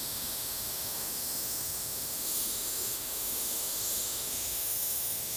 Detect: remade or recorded remade